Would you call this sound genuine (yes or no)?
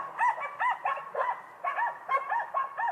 yes